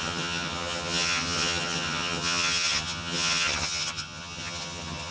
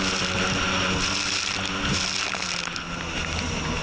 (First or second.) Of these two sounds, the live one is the second